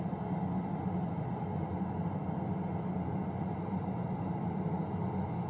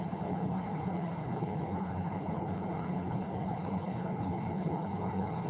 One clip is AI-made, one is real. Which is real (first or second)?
first